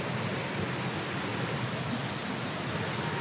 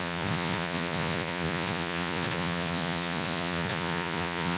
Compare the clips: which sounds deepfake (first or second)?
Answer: second